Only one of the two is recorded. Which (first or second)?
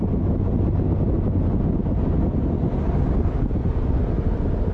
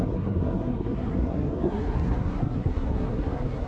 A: first